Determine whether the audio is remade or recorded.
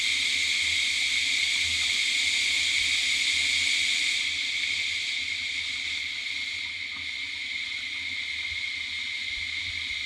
recorded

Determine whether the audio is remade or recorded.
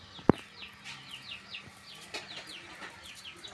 recorded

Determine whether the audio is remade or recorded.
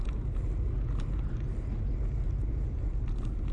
recorded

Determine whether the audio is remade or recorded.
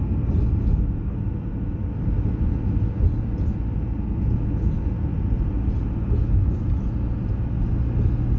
recorded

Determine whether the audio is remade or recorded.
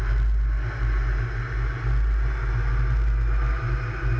recorded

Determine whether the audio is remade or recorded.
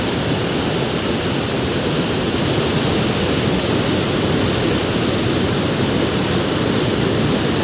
recorded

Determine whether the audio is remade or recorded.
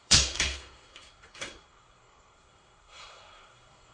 remade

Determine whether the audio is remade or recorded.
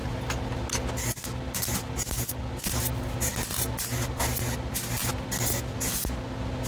recorded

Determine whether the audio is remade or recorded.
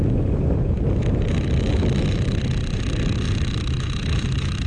recorded